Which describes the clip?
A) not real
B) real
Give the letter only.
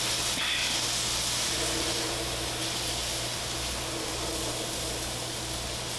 B